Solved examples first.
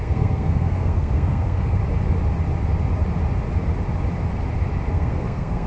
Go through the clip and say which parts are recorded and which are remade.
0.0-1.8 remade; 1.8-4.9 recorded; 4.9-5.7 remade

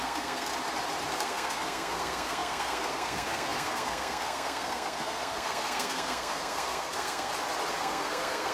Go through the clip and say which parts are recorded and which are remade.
0.0-0.5 remade; 0.5-1.1 recorded; 1.1-7.3 remade; 7.3-7.8 recorded; 7.8-8.5 remade

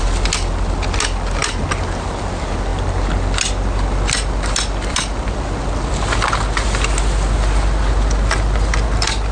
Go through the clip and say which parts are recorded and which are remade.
0.0-9.3 recorded

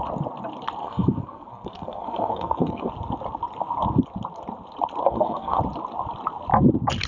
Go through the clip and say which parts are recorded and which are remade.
0.0-0.8 recorded; 0.8-2.9 remade; 2.9-5.0 recorded; 5.0-5.6 remade; 5.6-7.1 recorded

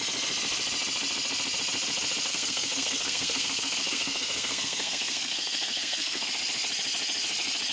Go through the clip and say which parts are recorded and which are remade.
0.0-2.3 recorded; 2.3-6.3 remade; 6.3-7.7 recorded

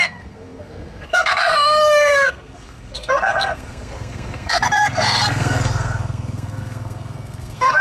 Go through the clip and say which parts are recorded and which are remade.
0.0-7.8 remade